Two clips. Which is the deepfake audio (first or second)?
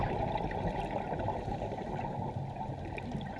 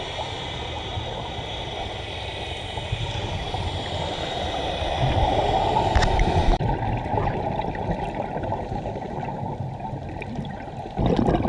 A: second